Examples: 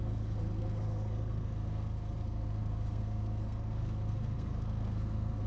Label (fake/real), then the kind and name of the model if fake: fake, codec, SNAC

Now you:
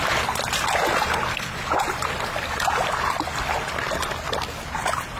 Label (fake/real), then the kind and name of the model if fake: real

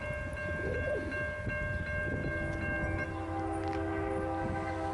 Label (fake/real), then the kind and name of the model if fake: real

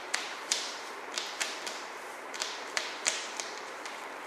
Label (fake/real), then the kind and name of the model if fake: fake, vocoder, BigVGAN v2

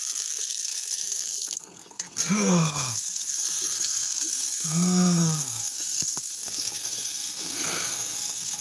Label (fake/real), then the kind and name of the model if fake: fake, codec, SNAC